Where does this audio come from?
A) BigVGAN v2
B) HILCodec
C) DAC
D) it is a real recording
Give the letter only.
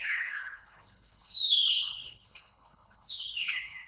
B